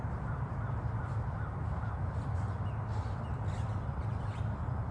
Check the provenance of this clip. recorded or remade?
recorded